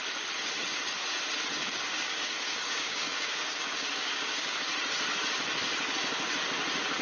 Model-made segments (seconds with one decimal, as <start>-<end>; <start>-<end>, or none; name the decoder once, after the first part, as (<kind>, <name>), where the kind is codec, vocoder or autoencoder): 1.6-4.7 (codec, DAC)